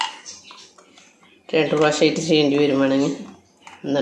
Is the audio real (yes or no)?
yes